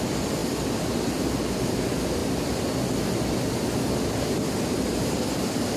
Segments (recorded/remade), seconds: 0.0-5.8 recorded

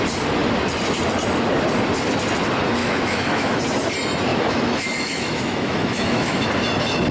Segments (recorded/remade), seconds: 0.0-2.8 recorded; 2.8-3.6 remade; 3.6-4.3 recorded; 4.3-6.5 remade; 6.5-7.1 recorded

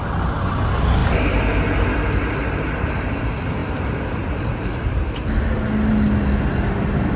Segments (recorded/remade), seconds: 0.0-7.2 recorded